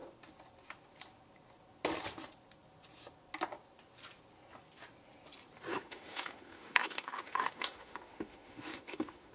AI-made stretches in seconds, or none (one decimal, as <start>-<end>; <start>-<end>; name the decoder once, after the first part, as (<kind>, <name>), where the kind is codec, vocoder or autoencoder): 5.7-9.3 (autoencoder, DAC-VAE)